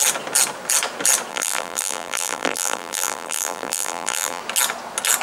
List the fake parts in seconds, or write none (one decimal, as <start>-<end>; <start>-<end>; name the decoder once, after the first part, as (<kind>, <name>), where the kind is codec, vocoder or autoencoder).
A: 1.3-4.4 (vocoder, BigVGAN v2)